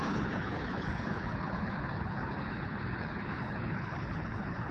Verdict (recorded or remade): remade